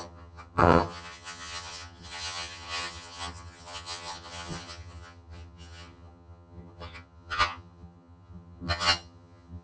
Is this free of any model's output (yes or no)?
no